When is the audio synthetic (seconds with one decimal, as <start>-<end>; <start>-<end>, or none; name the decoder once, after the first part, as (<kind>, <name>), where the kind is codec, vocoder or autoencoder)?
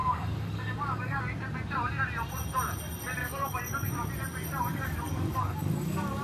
0.0-1.2 (codec, DAC); 3.2-4.1; 4.7-6.2